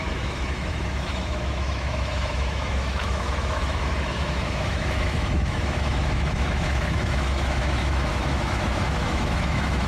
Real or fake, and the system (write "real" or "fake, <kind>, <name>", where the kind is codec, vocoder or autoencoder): fake, autoencoder, DAC-VAE